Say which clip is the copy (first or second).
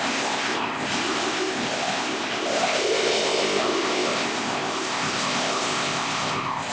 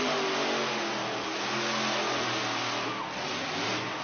first